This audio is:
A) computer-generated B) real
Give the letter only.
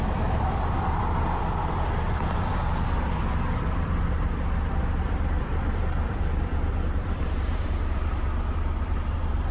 A